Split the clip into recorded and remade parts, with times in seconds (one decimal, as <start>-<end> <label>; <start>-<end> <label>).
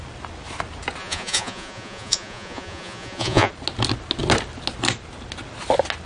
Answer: 0.0-1.0 recorded; 1.0-3.5 remade; 3.5-6.1 recorded